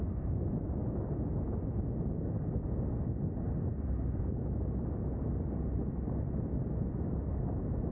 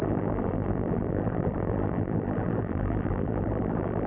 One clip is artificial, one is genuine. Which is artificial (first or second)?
second